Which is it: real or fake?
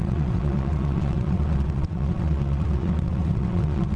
fake